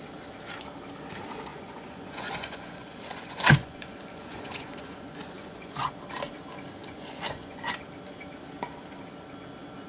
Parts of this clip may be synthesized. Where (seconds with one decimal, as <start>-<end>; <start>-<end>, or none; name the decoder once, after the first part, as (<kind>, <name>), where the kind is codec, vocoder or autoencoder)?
1.5-5.9 (vocoder, Vocos); 6.8-7.7

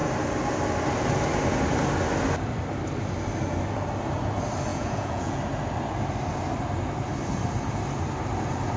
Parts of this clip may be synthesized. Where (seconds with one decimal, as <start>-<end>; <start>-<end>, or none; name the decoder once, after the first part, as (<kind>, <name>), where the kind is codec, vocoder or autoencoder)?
4.7-5.4 (vocoder, Vocos)